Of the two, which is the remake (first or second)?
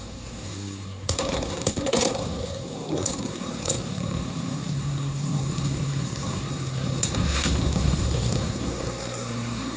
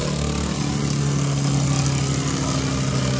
first